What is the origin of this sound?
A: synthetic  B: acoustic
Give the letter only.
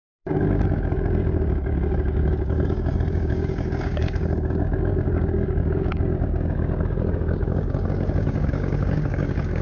A